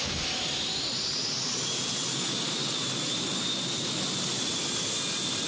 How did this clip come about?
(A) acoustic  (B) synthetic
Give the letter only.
A